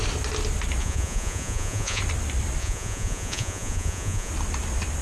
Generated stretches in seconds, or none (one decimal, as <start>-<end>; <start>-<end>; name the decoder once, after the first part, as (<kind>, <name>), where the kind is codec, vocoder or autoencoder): 0.8-2.0 (vocoder, Vocos); 2.6-4.3

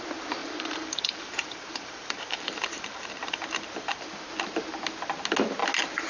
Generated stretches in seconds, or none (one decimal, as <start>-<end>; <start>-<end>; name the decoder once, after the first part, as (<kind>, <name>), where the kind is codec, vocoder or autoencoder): 0.4-4.0 (vocoder, BigVGAN v2)

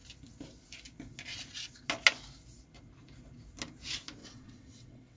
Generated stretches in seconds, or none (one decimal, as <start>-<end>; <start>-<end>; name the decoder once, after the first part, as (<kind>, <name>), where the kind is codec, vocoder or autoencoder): 4.2-5.2 (vocoder, WaveNeXt)